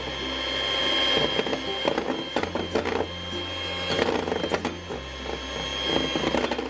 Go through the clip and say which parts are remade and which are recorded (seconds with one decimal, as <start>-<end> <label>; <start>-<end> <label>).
0.0-6.7 recorded